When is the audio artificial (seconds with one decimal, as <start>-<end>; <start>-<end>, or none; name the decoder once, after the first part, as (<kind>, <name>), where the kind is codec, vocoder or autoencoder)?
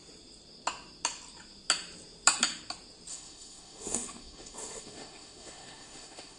3.1-6.4 (autoencoder, DAC-VAE)